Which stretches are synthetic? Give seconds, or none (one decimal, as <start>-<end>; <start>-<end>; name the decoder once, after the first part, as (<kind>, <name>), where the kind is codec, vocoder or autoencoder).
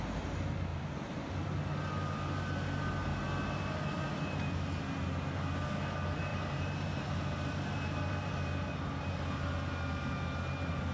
0.7-1.3 (vocoder, BigVGAN v2); 6.3-9.4